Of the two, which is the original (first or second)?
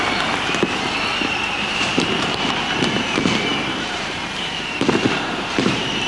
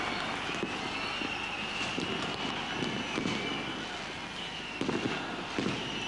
second